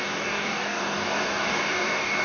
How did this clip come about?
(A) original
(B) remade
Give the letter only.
B